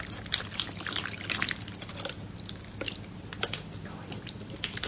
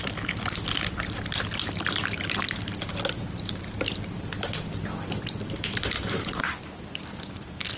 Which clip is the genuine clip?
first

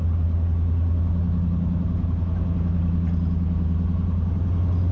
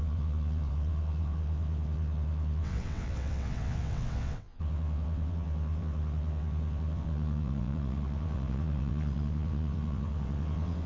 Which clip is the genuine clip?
first